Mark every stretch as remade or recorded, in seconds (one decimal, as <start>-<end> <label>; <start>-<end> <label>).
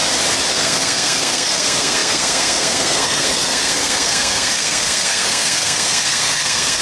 0.0-0.5 recorded; 0.5-6.8 remade